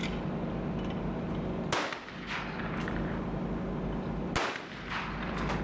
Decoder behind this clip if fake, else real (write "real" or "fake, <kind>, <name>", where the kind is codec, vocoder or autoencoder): real